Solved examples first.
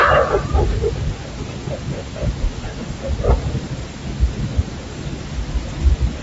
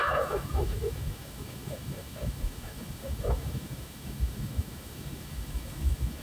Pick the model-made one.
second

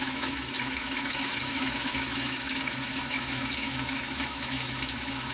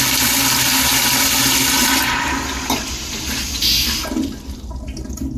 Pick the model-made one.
first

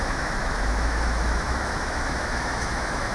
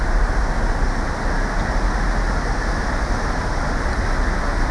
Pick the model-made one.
first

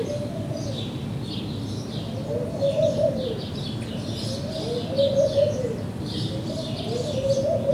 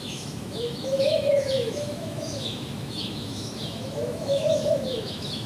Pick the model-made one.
second